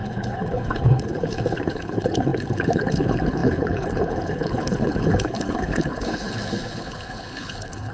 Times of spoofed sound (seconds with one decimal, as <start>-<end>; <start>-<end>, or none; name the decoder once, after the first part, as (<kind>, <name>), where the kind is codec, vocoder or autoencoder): 0.0-7.9 (codec, HILCodec)